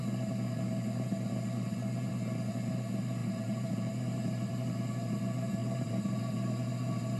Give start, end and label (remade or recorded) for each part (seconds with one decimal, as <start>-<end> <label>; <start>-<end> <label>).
0.0-3.2 recorded; 3.2-3.9 remade; 3.9-5.6 recorded; 5.6-6.2 remade; 6.2-7.2 recorded